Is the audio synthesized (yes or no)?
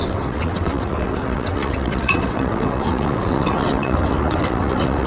yes